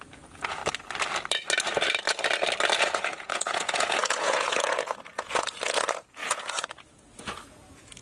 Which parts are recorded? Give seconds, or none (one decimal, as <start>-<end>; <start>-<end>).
0.6-2.8